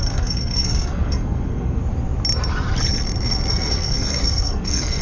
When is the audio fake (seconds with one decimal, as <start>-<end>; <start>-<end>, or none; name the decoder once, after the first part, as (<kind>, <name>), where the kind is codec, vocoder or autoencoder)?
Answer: 0.0-1.8 (codec, SNAC); 3.5-5.0